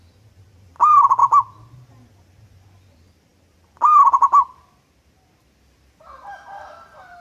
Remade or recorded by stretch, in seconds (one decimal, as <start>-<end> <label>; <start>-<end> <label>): 0.0-7.2 recorded